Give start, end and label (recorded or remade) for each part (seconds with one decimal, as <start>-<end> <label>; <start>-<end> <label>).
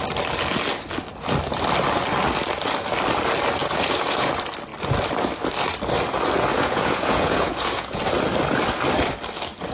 0.0-3.6 recorded; 3.6-4.3 remade; 4.3-6.5 recorded; 6.5-8.0 remade; 8.0-9.7 recorded